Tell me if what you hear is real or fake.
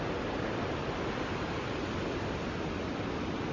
real